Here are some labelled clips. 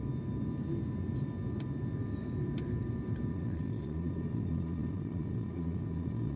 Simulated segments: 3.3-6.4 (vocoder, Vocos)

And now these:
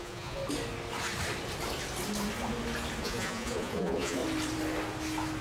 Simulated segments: 0.0-0.4 (vocoder, Vocos); 3.0-4.2

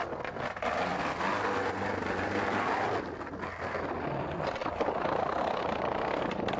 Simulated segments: none

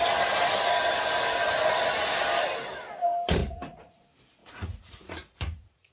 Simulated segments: 3.4-4.0 (vocoder, Vocos); 4.4-5.9

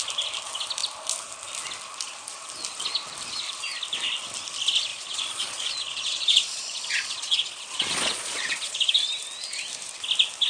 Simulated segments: 4.9-8.9 (vocoder, Vocos)

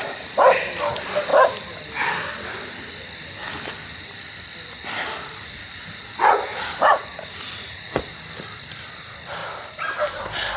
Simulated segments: 5.6-8.1 (vocoder, Vocos)

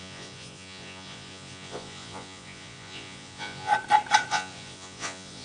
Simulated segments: 0.0-3.7 (vocoder, Vocos); 4.3-5.4